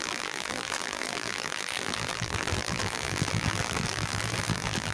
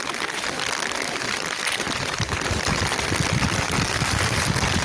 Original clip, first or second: second